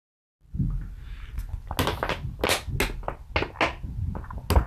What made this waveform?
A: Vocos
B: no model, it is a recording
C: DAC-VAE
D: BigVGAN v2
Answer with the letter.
B